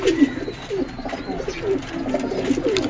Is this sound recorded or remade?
recorded